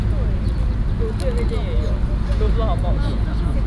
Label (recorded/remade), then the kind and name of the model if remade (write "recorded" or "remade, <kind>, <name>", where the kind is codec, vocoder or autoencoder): recorded